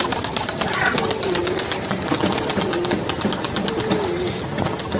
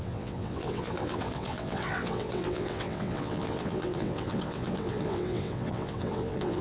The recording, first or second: first